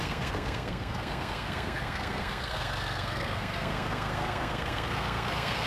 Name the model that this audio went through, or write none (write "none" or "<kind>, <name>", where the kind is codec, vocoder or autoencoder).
codec, SNAC